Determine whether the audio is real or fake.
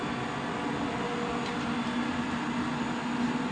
real